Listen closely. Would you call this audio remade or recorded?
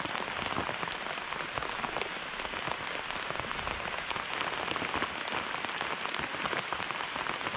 recorded